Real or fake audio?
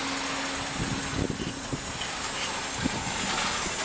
real